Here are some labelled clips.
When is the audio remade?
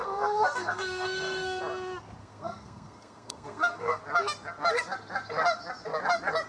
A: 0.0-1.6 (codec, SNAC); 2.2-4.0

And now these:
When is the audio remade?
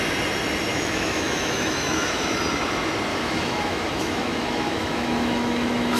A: 0.7-2.4 (autoencoder, DAC-VAE); 3.1-6.0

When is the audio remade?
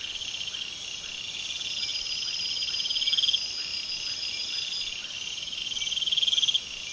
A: 5.0-5.6 (vocoder, BigVGAN v2)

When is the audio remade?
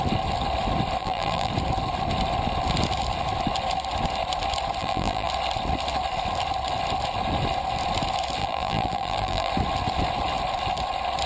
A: 1.0-1.5 (vocoder, BigVGAN v2); 4.8-5.3; 8.4-9.5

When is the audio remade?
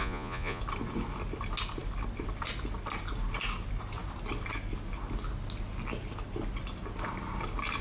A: 0.0-0.6 (vocoder, Vocos)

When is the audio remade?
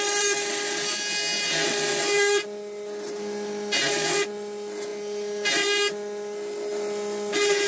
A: none